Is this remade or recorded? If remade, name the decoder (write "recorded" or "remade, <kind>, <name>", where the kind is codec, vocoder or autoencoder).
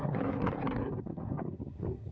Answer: remade, codec, SNAC